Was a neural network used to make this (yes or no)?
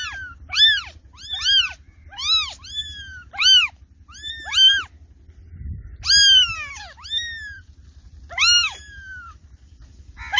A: no